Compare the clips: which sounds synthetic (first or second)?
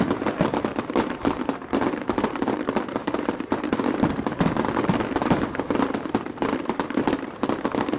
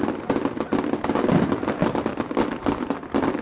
first